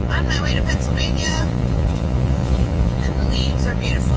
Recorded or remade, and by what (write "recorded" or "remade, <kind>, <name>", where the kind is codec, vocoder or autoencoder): remade, vocoder, Vocos